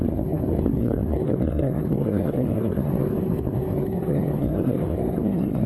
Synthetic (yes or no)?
yes